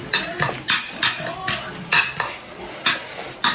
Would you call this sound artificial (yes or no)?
no